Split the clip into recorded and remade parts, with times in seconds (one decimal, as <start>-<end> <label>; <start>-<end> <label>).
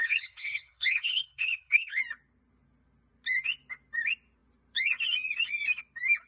0.0-2.0 remade; 2.0-6.3 recorded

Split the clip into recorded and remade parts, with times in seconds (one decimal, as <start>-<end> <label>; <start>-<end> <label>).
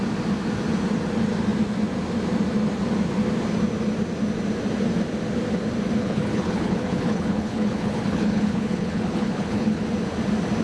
0.0-6.0 recorded; 6.0-9.8 remade; 9.8-10.6 recorded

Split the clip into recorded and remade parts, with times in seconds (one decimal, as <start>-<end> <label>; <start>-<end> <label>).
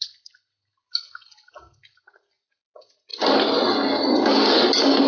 0.0-5.1 recorded